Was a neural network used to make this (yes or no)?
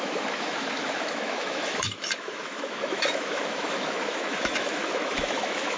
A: yes